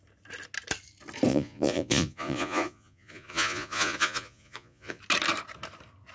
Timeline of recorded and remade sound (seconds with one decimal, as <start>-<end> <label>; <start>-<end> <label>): 0.0-1.3 recorded; 1.3-5.0 remade; 5.0-6.1 recorded